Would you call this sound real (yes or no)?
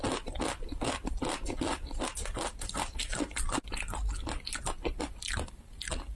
yes